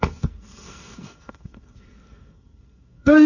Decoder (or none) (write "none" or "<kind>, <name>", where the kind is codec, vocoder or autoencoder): codec, SNAC